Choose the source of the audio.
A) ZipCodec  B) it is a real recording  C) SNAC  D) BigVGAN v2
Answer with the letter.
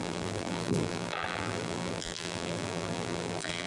D